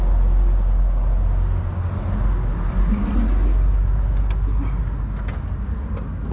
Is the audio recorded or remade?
recorded